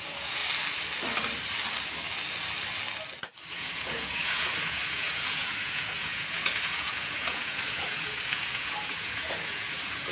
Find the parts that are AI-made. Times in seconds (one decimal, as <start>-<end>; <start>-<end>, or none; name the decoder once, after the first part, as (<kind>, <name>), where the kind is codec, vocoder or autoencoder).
0.0-0.4 (vocoder, Vocos); 3.5-10.1